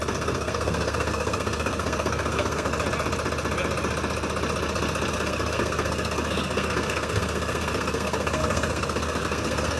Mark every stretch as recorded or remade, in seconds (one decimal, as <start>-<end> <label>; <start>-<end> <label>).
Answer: 0.0-2.7 remade; 2.7-5.1 recorded; 5.1-9.8 remade